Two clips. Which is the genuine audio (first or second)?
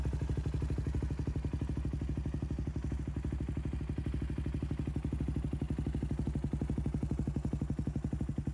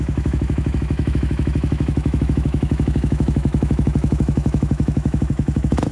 first